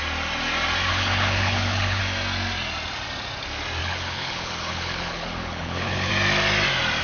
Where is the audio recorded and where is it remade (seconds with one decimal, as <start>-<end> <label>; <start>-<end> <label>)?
0.0-0.9 recorded; 0.9-2.0 remade; 2.0-3.8 recorded; 3.8-6.1 remade; 6.1-7.0 recorded